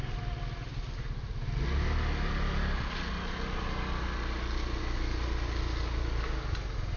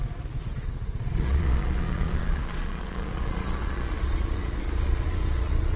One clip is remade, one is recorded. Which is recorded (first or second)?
first